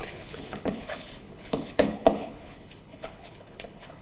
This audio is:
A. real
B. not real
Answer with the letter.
B